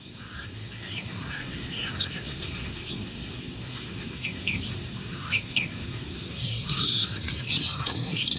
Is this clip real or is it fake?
fake